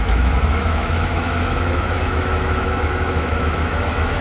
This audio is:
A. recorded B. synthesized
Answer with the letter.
B